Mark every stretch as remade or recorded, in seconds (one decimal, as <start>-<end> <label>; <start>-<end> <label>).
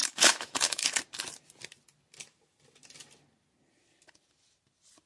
0.0-1.0 remade; 1.0-5.1 recorded